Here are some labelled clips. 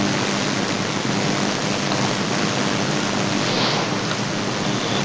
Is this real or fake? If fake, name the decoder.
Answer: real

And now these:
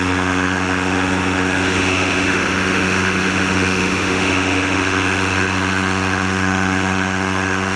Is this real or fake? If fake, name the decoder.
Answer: fake, autoencoder, DAC-VAE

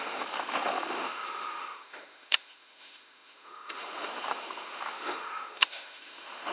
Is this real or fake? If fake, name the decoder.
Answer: fake, autoencoder, DAC-VAE